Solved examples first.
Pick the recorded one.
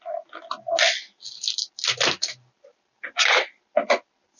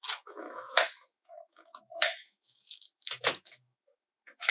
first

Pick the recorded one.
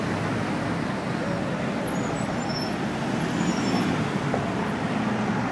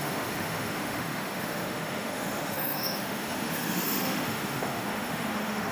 first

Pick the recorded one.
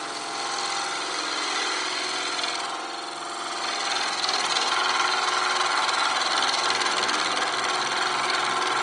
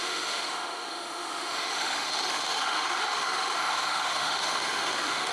first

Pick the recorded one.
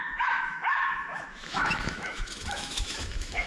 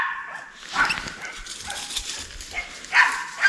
second